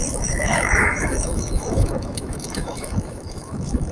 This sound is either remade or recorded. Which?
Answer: remade